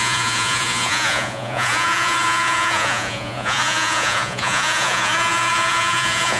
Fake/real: fake